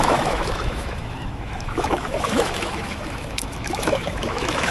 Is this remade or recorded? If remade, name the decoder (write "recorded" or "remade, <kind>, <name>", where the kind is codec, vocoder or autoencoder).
remade, autoencoder, DAC-VAE